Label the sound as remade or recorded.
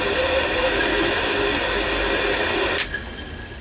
recorded